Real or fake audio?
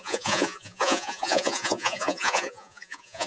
fake